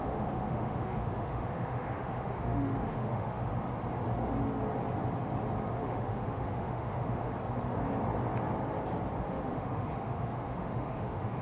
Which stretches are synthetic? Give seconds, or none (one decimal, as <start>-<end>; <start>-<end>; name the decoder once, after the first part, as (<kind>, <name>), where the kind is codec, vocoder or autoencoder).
0.0-3.5 (autoencoder, DAC-VAE); 5.7-7.3; 9.2-11.4